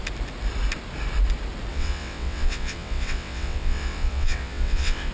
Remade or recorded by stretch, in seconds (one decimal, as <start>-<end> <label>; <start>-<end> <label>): 0.0-1.7 recorded; 1.7-5.1 remade